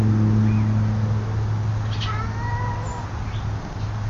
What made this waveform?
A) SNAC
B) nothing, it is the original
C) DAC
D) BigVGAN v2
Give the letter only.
B